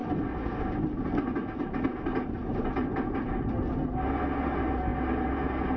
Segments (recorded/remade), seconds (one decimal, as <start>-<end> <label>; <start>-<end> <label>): 0.0-5.8 recorded